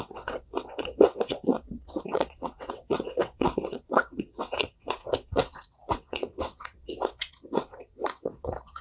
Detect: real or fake fake